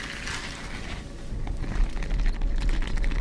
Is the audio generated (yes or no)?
no